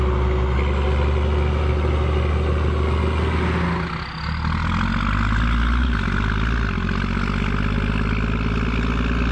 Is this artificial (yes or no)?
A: no